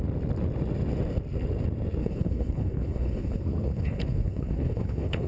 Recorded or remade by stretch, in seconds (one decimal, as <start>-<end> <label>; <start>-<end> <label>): 0.0-2.0 recorded; 2.0-5.3 remade